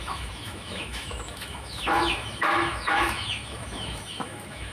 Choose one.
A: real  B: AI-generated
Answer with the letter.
B